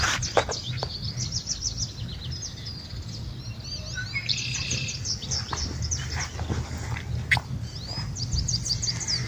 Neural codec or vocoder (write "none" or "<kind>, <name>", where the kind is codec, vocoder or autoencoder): none